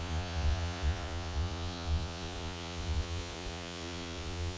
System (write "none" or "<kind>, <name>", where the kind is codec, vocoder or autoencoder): vocoder, Vocos